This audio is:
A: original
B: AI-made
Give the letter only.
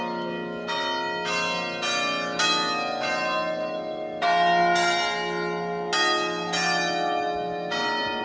A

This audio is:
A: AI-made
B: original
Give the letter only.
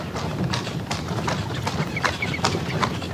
B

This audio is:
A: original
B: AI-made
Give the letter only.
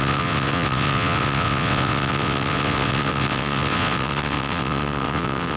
B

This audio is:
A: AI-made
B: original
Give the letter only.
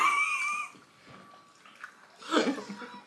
B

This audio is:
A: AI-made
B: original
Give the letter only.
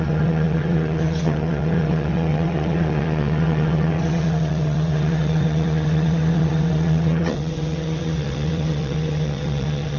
A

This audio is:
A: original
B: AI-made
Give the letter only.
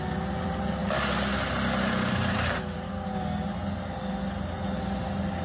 A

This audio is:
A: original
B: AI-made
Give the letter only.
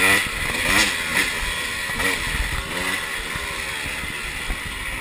A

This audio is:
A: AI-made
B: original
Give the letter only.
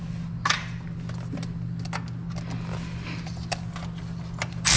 B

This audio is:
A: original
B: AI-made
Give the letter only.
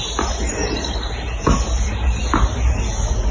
A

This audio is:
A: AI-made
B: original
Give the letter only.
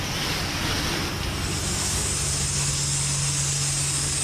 B